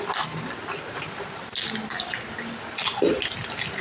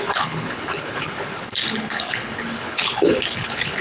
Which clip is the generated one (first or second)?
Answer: second